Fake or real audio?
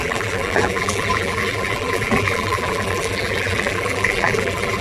fake